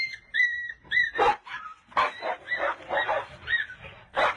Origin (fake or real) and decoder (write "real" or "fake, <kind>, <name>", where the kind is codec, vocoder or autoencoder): real